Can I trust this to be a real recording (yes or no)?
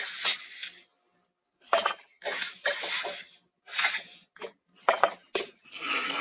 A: yes